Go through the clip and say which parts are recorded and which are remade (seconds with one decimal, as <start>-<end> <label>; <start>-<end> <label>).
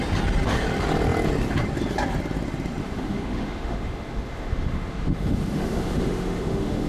0.0-2.8 recorded; 2.8-6.9 remade